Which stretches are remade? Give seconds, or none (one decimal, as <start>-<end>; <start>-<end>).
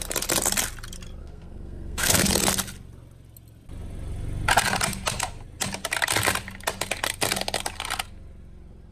1.2-2.2